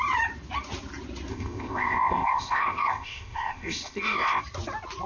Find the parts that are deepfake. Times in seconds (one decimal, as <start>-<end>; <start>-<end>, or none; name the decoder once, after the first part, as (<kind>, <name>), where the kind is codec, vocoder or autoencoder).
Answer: 1.3-4.4 (codec, ZipCodec)